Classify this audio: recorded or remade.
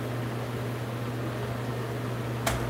recorded